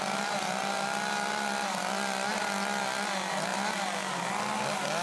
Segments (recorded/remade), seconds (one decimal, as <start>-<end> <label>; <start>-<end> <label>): 0.0-5.0 recorded